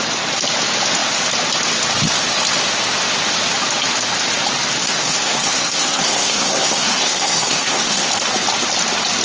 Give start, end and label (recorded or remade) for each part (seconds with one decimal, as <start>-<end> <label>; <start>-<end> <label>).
0.0-4.8 recorded; 4.8-8.1 remade; 8.1-9.2 recorded